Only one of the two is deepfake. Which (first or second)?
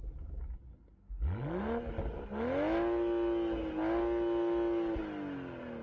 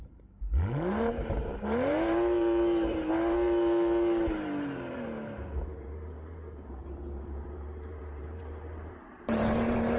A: second